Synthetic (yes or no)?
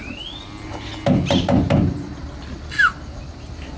no